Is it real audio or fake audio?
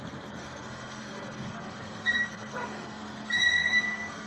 fake